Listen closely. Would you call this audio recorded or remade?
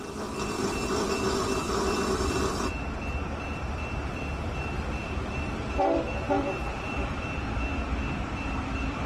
remade